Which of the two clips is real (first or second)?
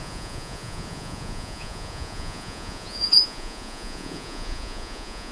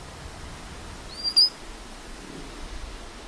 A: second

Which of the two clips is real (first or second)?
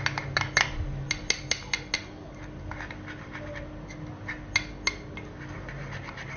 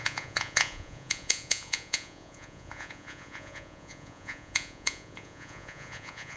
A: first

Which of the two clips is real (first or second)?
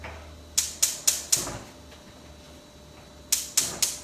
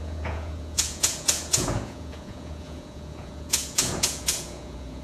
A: first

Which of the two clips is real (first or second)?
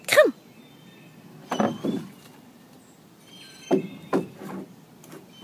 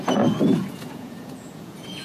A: first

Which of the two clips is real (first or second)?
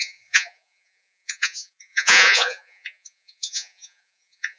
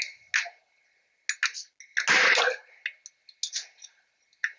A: second